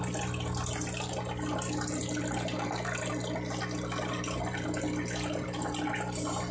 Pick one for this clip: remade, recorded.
recorded